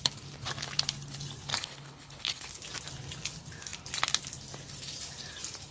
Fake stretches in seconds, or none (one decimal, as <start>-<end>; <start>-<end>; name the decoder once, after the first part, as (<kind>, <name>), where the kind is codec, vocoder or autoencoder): 1.5-2.5 (codec, HILCodec)

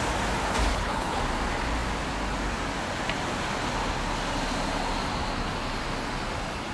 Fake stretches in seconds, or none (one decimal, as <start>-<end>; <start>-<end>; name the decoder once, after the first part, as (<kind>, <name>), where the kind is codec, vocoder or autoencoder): 0.7-1.2 (codec, HILCodec)

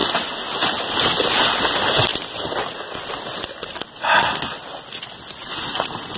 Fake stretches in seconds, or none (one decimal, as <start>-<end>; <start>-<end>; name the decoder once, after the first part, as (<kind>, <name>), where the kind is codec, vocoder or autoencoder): none